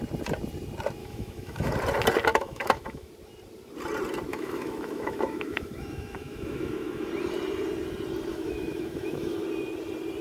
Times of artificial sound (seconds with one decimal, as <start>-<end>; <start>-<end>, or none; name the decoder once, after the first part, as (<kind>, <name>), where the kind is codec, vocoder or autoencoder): 1.0-1.7 (autoencoder, DAC-VAE); 2.3-3.1; 4.3-7.1; 8.3-9.4